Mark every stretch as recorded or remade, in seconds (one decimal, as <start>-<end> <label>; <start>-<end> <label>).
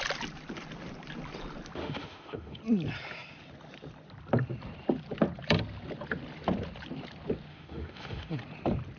0.0-1.8 recorded; 1.8-2.6 remade; 2.6-7.5 recorded; 7.5-8.4 remade; 8.4-9.0 recorded